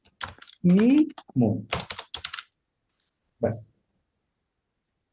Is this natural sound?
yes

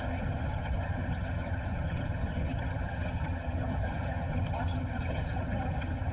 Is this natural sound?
no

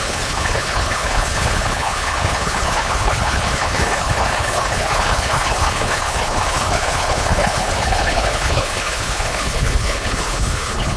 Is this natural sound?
no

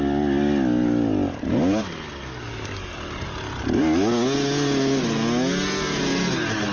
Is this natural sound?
yes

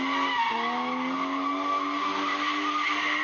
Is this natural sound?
yes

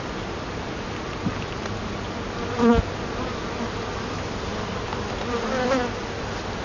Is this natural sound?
yes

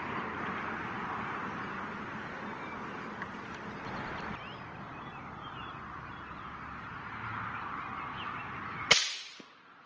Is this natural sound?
yes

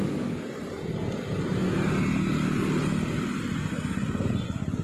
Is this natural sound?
yes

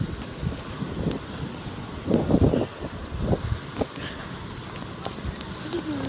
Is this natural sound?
yes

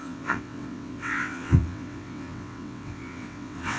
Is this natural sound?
no